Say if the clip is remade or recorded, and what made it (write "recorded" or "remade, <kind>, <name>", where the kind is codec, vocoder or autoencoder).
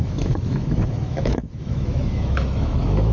remade, autoencoder, DAC-VAE